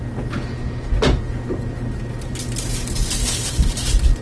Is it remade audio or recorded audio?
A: recorded